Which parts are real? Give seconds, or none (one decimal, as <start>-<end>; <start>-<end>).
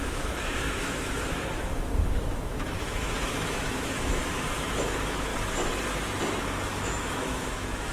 5.3-6.4